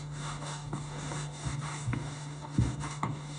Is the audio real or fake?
fake